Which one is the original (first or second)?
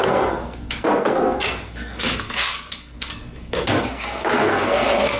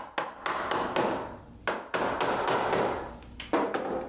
second